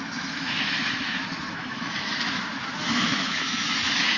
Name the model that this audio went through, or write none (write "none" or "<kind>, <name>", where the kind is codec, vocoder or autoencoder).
autoencoder, DAC-VAE